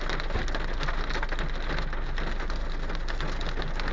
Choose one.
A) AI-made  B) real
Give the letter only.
B